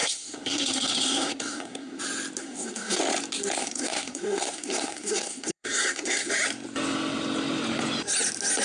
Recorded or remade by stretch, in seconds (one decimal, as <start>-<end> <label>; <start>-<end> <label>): 0.0-2.0 remade; 2.0-2.4 recorded; 2.4-3.0 remade; 3.0-3.6 recorded; 3.6-6.3 remade; 6.3-8.6 recorded